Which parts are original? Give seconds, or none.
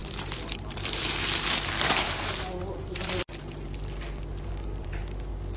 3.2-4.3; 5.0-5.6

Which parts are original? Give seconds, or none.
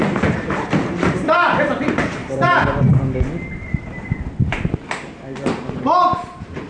2.2-6.2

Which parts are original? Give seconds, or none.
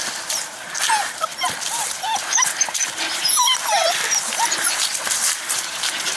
none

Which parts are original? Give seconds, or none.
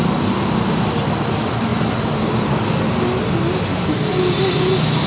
0.0-5.1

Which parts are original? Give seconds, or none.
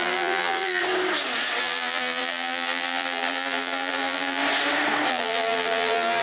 0.8-1.6; 4.4-5.1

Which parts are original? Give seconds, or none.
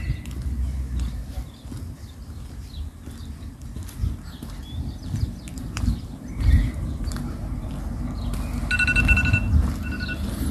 0.0-5.5; 7.7-10.5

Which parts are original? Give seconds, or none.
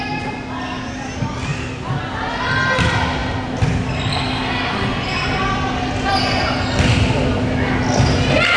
0.0-8.6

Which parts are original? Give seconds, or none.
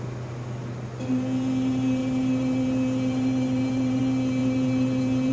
0.0-2.0; 4.0-4.4